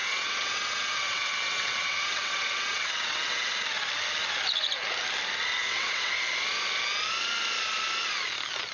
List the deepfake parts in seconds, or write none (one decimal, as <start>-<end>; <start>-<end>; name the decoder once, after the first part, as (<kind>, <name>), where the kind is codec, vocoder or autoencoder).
0.0-3.5 (vocoder, WaveNeXt); 5.6-6.1